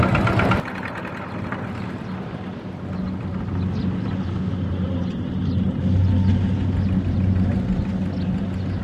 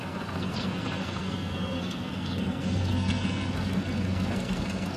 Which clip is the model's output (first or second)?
second